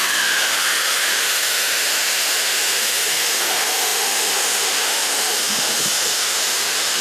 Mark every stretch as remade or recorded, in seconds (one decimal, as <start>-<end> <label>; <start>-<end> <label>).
0.0-7.0 remade